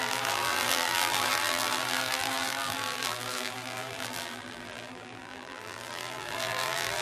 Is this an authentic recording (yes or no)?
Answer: no